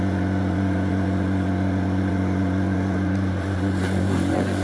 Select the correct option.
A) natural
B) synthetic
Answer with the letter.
B